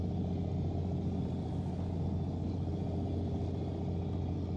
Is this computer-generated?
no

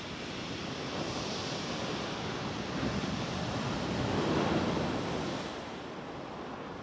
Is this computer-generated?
yes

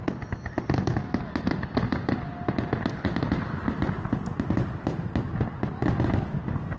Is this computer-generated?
no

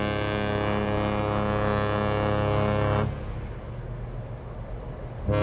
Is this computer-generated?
no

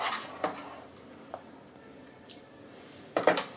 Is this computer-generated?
no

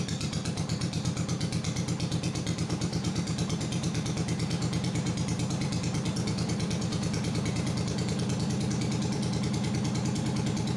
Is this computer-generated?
yes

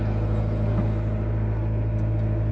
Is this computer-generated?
no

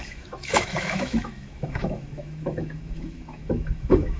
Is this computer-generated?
yes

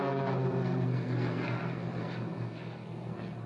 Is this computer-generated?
yes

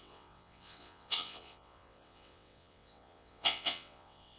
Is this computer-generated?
yes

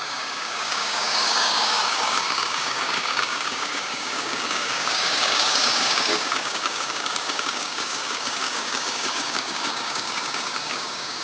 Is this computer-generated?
yes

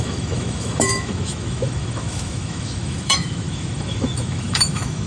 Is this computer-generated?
yes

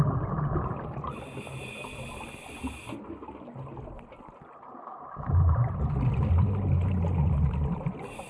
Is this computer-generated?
no